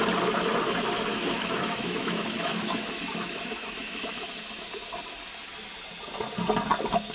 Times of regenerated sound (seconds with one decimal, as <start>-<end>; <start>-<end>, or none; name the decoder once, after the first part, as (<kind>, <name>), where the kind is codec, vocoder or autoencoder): 1.1-4.4 (autoencoder, DAC-VAE)